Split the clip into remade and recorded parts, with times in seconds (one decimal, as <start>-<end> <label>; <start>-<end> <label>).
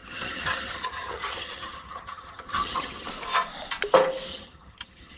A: 0.0-3.1 remade; 3.1-4.3 recorded; 4.3-5.2 remade